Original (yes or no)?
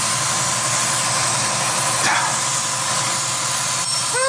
yes